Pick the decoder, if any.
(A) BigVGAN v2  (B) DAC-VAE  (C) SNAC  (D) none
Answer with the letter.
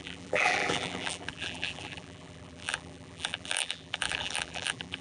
A